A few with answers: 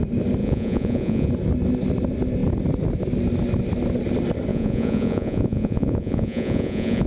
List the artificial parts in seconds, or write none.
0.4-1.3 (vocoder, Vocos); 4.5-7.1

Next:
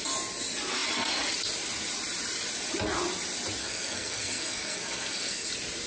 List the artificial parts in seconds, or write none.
3.6-5.5 (codec, SNAC)